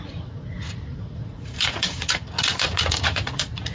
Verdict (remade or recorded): remade